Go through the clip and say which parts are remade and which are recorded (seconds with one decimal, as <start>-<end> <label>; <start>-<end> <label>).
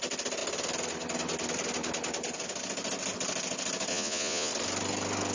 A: 0.0-3.9 recorded; 3.9-4.5 remade; 4.5-5.3 recorded